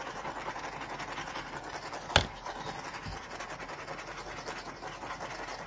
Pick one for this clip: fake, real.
real